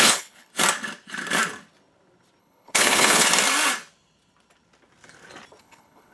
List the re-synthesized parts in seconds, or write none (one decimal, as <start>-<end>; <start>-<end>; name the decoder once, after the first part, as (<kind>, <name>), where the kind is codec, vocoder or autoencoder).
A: 0.0-0.5 (codec, HILCodec); 2.4-3.3; 5.6-6.1